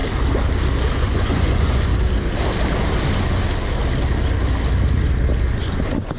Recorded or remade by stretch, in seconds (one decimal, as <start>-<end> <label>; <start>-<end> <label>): 0.0-0.9 recorded; 0.9-1.9 remade; 1.9-5.6 recorded; 5.6-6.2 remade